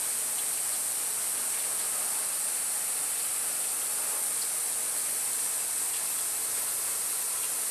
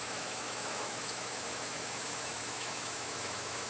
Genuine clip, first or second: first